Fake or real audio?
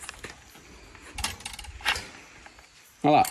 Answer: real